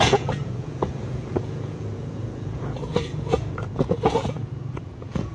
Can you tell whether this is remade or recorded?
remade